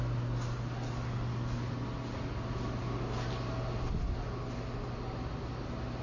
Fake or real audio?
real